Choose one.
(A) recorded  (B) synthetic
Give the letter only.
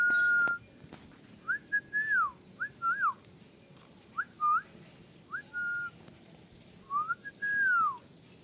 A